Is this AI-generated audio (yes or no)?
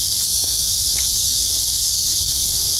yes